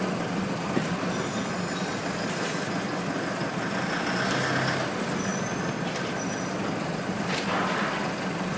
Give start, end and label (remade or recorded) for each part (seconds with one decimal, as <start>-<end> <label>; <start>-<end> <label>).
0.0-8.6 recorded